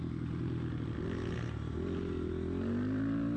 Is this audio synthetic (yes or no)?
no